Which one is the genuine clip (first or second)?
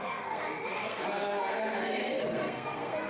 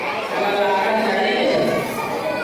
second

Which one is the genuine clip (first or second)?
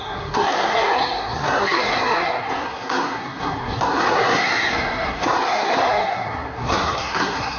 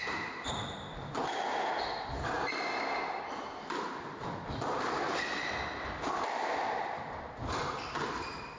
second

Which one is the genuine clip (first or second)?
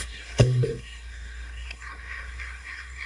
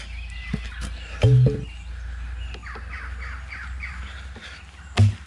second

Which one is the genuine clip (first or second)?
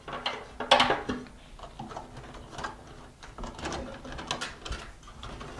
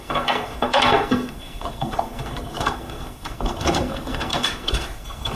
first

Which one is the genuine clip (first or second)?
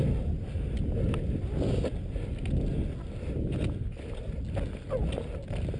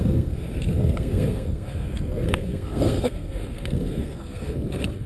first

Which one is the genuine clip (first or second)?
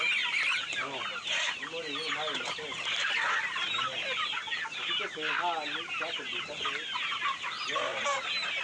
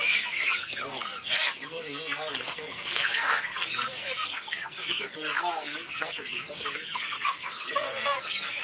first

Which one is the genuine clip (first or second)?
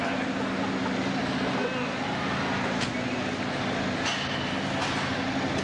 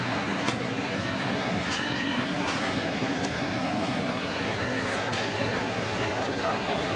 first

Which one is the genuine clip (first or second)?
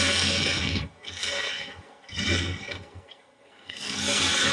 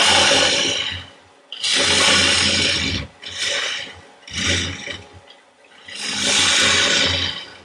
second